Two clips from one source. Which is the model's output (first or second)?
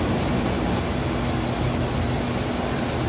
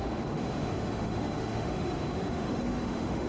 second